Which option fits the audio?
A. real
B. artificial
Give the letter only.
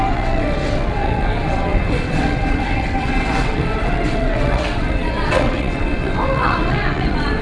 B